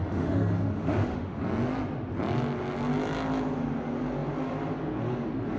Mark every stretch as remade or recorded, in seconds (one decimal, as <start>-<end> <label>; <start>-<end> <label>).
0.0-1.4 remade; 1.4-5.6 recorded